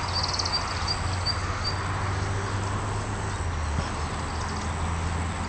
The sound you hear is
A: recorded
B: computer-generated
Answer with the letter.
A